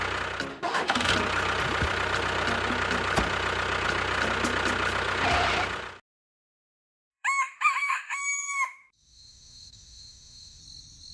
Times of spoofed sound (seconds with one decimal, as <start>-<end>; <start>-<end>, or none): 0.5-1.1; 7.1-10.6